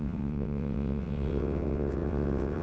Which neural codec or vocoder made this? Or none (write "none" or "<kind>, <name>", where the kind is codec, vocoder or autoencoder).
vocoder, WaveNeXt